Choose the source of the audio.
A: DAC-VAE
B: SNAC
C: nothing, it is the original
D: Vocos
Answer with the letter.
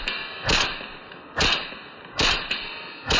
C